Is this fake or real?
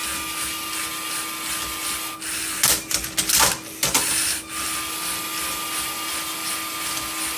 real